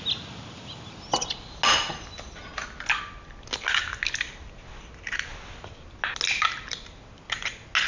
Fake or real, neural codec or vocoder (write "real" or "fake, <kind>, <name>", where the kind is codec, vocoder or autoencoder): real